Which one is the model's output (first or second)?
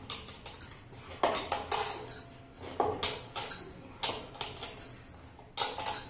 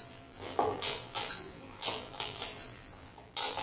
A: second